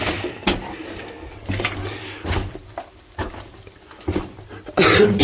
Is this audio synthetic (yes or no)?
yes